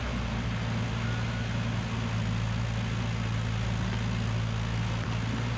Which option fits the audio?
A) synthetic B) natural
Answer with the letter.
B